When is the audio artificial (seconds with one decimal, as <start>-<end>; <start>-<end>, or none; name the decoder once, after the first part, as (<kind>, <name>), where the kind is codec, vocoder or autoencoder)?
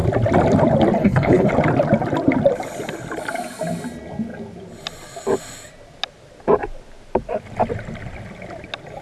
1.0-1.5 (codec, HILCodec)